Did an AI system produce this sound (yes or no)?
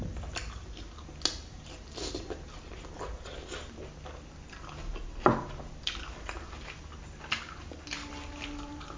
no